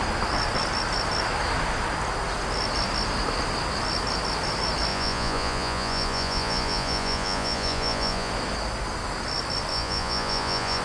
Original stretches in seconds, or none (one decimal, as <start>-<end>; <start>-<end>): 0.0-4.9; 8.3-9.7

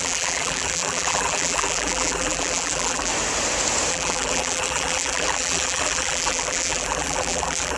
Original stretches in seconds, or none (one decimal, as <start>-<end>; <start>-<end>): 3.1-3.9

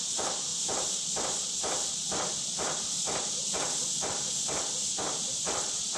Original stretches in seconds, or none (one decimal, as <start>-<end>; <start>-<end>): 0.0-6.0

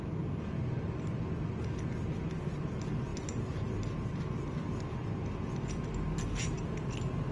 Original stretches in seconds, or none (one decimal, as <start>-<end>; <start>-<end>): 0.0-7.3

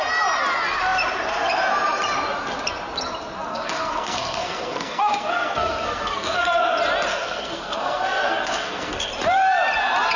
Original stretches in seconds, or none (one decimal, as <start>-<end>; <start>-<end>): 0.0-3.5; 6.6-7.1; 9.1-10.2

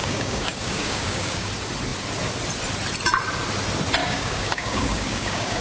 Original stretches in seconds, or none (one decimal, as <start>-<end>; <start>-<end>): 1.5-4.0

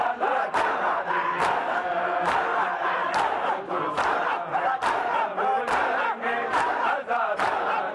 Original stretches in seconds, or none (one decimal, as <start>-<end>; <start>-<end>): 0.0-2.5; 3.7-6.5; 7.5-7.9